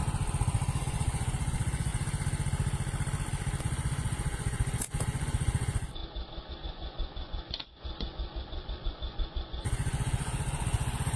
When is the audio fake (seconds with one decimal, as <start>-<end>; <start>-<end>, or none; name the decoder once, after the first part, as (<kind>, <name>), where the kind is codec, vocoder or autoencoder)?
0.8-1.9 (vocoder, Vocos); 3.6-6.0; 6.5-11.2